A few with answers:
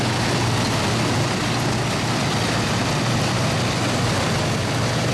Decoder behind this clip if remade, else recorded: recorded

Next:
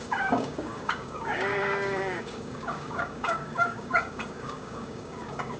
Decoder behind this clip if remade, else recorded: remade, codec, DAC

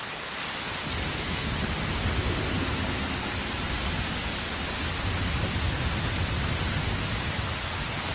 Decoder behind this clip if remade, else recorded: recorded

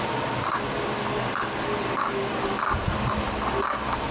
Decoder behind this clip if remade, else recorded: recorded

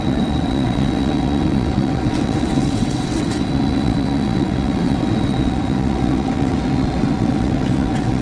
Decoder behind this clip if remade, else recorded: remade, vocoder, WaveNeXt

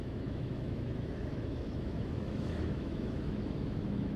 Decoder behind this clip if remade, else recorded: remade, autoencoder, DAC-VAE